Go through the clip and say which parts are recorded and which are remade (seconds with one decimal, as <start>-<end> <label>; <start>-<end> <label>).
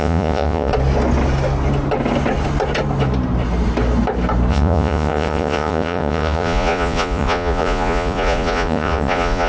0.0-0.7 remade; 0.7-4.5 recorded; 4.5-9.5 remade